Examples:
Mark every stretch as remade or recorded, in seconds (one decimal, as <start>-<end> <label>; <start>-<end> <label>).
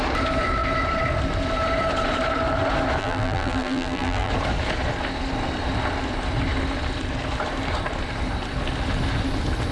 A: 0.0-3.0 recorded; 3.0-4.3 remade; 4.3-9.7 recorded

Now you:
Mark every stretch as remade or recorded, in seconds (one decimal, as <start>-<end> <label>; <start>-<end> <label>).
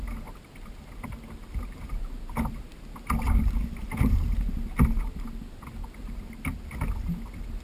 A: 0.0-2.7 recorded; 2.7-3.6 remade; 3.6-7.6 recorded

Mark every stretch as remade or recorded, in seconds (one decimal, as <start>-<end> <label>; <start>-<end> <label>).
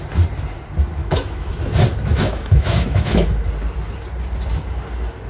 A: 0.0-1.0 recorded; 1.0-1.5 remade; 1.5-2.1 recorded; 2.1-3.3 remade; 3.3-5.3 recorded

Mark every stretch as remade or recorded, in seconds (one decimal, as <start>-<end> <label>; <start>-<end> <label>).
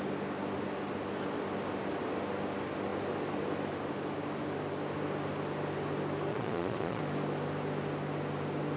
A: 0.0-6.3 recorded; 6.3-7.0 remade; 7.0-8.8 recorded